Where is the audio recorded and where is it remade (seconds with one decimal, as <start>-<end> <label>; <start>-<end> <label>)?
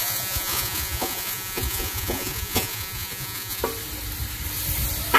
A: 0.0-3.6 remade; 3.6-5.2 recorded